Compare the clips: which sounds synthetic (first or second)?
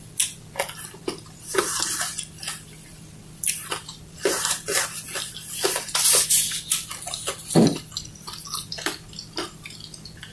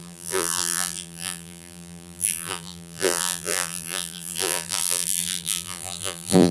second